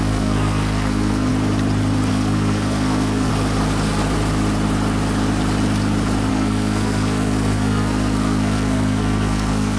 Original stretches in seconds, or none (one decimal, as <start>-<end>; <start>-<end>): 1.3-2.1; 3.3-6.3